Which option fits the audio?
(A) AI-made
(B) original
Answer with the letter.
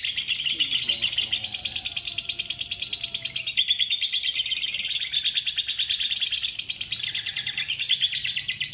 B